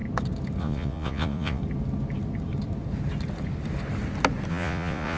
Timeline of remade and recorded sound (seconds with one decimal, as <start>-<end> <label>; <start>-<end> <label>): 0.0-0.6 recorded; 0.6-1.6 remade; 1.6-4.5 recorded; 4.5-5.2 remade

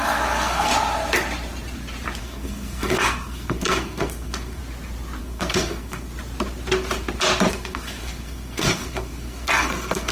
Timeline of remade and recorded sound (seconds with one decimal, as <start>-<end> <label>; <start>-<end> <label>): 0.0-0.7 remade; 0.7-2.2 recorded; 2.2-4.6 remade; 4.6-5.2 recorded; 5.2-6.1 remade; 6.1-7.5 recorded; 7.5-10.1 remade

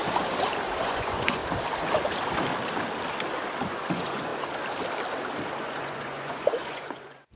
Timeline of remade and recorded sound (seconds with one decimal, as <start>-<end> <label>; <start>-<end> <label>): 0.0-0.8 recorded; 0.8-1.4 remade; 1.4-3.7 recorded; 3.7-4.3 remade; 4.3-5.6 recorded; 5.6-7.4 remade